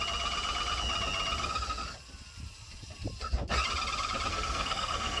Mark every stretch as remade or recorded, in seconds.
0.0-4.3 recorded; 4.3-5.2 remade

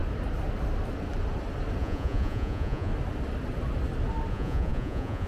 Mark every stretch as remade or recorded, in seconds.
0.0-1.8 recorded; 1.8-2.9 remade; 2.9-4.3 recorded; 4.3-5.3 remade

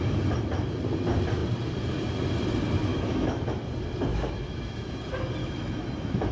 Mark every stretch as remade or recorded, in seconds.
0.0-2.9 recorded; 2.9-3.5 remade; 3.5-4.1 recorded; 4.1-5.0 remade; 5.0-5.4 recorded; 5.4-6.3 remade

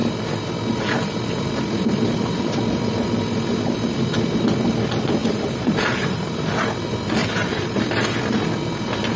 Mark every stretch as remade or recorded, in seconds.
0.0-5.2 recorded; 5.2-6.5 remade; 6.5-7.2 recorded; 7.2-7.8 remade; 7.8-9.2 recorded

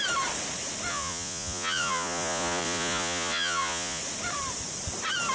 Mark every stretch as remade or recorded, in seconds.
0.0-0.9 recorded; 0.9-4.0 remade; 4.0-5.3 recorded

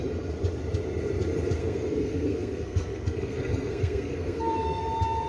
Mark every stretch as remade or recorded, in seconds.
0.0-1.6 recorded; 1.6-4.8 remade; 4.8-5.3 recorded

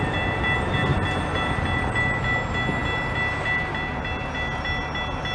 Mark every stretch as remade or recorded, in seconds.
0.0-5.3 recorded

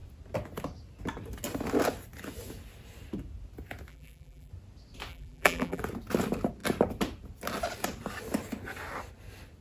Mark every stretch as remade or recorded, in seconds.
0.0-3.9 recorded; 3.9-4.5 remade; 4.5-5.1 recorded; 5.1-5.8 remade; 5.8-9.6 recorded